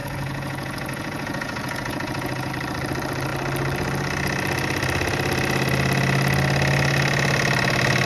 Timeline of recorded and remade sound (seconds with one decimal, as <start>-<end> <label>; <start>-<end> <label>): 0.0-2.5 remade; 2.5-8.1 recorded